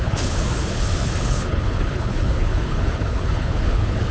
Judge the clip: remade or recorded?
remade